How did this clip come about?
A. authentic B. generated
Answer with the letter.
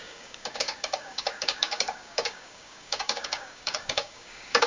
B